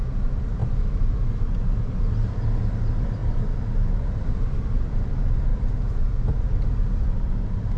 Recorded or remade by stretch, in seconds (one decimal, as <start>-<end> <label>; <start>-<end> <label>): 0.0-0.6 remade; 0.6-2.8 recorded; 2.8-3.2 remade; 3.2-4.5 recorded; 4.5-5.5 remade; 5.5-7.0 recorded; 7.0-7.8 remade